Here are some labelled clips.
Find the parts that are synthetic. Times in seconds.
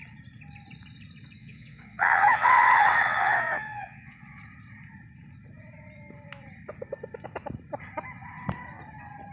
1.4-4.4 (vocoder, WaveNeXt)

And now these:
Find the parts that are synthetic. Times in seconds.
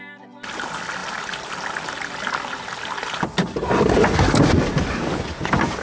none